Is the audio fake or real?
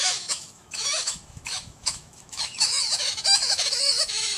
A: fake